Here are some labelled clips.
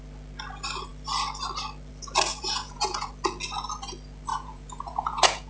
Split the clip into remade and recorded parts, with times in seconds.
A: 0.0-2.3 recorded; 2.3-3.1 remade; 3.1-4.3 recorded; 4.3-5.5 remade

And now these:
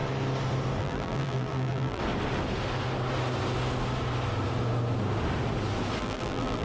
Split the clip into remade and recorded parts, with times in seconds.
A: 0.0-0.8 recorded; 0.8-2.0 remade; 2.0-6.0 recorded; 6.0-6.6 remade

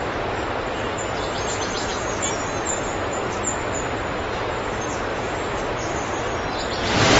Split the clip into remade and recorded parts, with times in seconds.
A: 0.0-5.1 recorded; 5.1-6.2 remade; 6.2-7.2 recorded

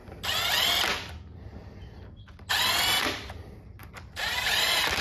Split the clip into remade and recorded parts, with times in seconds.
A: 0.0-3.0 recorded; 3.0-5.0 remade

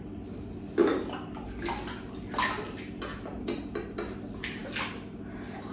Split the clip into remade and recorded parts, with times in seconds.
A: 0.0-5.7 recorded

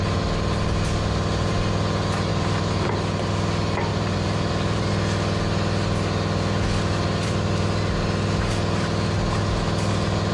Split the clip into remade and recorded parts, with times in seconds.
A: 0.0-2.3 recorded; 2.3-2.9 remade; 2.9-3.9 recorded; 3.9-4.9 remade; 4.9-10.3 recorded

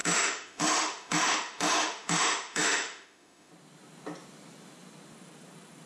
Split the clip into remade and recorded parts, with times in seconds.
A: 0.0-3.5 remade; 3.5-5.9 recorded

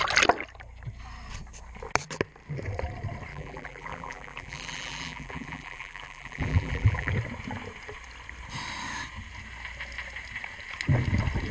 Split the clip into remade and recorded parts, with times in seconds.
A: 0.0-3.3 recorded; 3.3-7.1 remade; 7.1-11.5 recorded